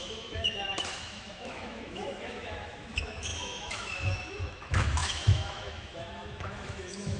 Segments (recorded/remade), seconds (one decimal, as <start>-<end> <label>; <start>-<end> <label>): 0.0-7.2 remade